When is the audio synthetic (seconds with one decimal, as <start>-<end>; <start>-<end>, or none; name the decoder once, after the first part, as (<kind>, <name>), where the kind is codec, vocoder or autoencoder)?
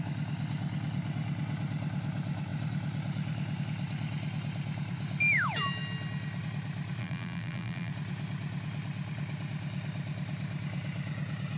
7.0-7.9 (vocoder, BigVGAN v2)